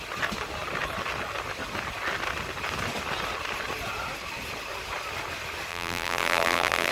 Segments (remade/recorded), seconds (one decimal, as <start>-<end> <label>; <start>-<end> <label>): 0.0-5.7 recorded; 5.7-6.9 remade